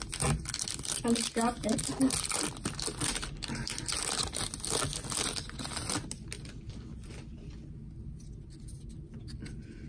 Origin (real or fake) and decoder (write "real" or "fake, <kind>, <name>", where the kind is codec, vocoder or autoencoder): real